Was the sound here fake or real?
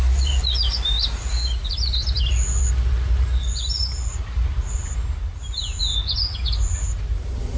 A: real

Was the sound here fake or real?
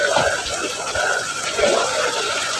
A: fake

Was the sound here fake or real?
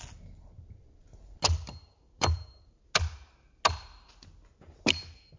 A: real